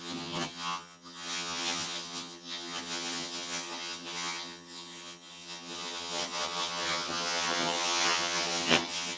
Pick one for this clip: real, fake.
fake